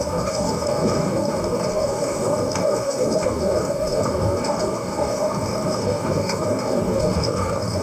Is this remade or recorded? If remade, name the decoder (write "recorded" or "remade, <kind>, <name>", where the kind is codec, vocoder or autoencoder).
remade, codec, DAC